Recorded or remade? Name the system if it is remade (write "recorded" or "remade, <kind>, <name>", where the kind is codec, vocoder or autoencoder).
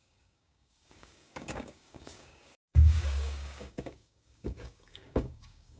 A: remade, codec, DAC